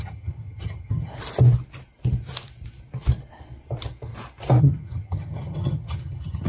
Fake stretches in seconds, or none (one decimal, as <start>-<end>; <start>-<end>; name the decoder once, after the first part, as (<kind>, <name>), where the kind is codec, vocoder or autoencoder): 0.0-1.1 (vocoder, HiFi-GAN); 4.6-6.5